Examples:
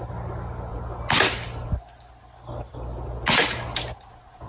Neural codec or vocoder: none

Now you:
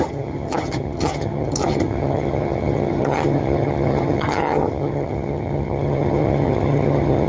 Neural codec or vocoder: vocoder, HiFi-GAN